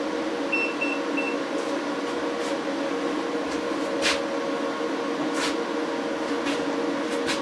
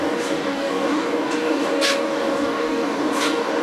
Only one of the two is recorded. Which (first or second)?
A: first